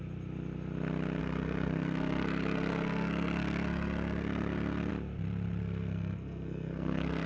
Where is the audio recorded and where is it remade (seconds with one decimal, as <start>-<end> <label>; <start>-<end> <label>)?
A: 0.0-1.2 recorded; 1.2-4.9 remade; 4.9-5.6 recorded; 5.6-7.3 remade